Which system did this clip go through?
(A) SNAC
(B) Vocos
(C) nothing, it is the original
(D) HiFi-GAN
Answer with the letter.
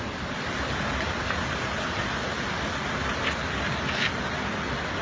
C